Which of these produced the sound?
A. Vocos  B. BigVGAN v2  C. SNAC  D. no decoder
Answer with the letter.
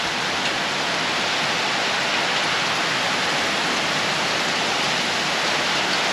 D